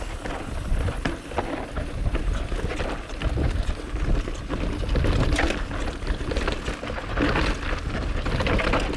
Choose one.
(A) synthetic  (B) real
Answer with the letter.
B